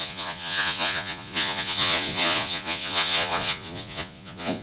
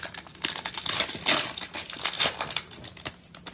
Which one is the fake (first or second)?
first